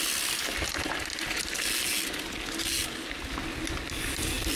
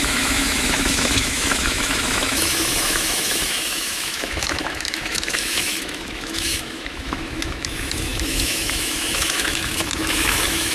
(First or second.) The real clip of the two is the first